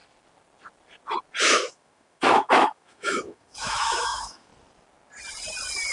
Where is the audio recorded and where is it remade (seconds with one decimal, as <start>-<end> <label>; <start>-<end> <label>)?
0.0-1.4 recorded; 1.4-4.5 remade; 4.5-5.9 recorded

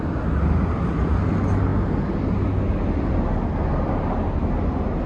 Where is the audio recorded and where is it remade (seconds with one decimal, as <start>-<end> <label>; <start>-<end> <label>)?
0.0-5.1 recorded

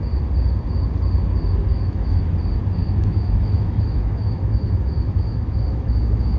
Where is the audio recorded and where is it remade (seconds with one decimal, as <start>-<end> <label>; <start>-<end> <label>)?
0.0-1.7 recorded; 1.7-2.2 remade; 2.2-2.8 recorded; 2.8-6.4 remade